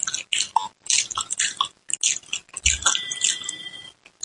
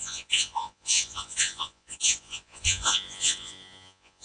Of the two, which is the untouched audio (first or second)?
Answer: first